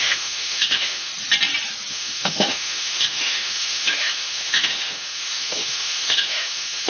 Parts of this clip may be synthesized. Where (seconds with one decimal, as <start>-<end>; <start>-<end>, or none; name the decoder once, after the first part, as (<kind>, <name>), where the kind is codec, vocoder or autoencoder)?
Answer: 0.0-1.1 (autoencoder, DAC-VAE); 1.9-6.9